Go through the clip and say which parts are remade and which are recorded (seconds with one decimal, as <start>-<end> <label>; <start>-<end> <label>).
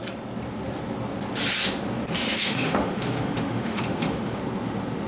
0.0-2.2 recorded; 2.2-4.4 remade; 4.4-5.1 recorded